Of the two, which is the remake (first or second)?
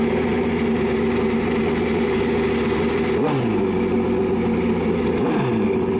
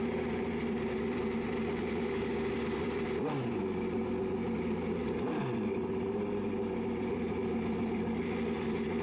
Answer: second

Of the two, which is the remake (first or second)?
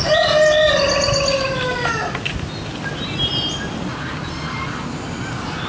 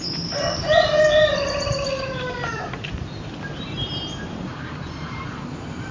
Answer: second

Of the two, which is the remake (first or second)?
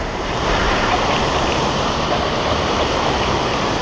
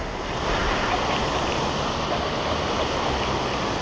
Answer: first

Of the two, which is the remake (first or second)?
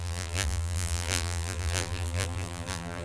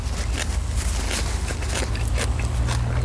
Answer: first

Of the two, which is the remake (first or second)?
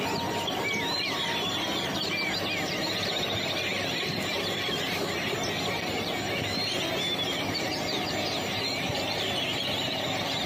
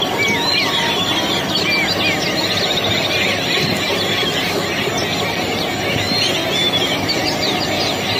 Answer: first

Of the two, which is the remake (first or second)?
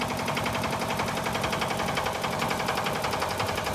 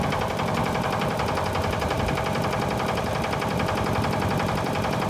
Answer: second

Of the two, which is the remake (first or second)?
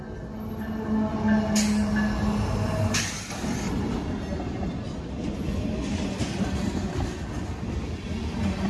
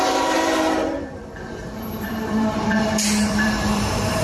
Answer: second